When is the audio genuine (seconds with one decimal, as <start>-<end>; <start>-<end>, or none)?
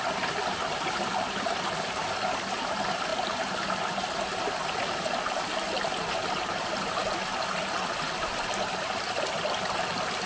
0.0-10.3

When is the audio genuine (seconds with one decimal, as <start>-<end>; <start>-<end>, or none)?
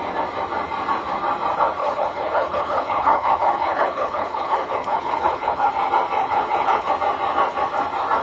0.0-1.8; 5.7-6.2; 6.9-8.2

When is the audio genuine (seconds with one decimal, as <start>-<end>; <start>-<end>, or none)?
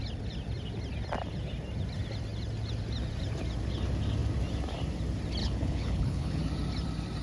0.0-5.4; 6.4-7.2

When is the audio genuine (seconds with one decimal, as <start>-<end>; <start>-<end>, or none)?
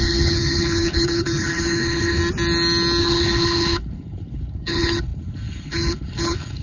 2.2-3.0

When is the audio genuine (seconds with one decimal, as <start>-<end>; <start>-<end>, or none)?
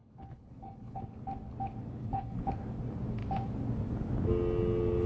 1.0-2.0; 2.5-5.1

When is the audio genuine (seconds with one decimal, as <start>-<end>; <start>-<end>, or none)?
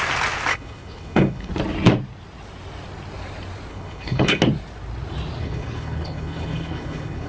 0.0-0.5; 1.5-3.7; 4.4-5.4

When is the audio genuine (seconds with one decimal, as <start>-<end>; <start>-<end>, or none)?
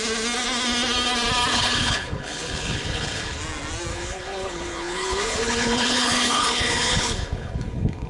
0.0-1.5; 3.4-3.9